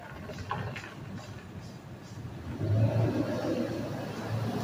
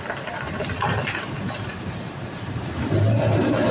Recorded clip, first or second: first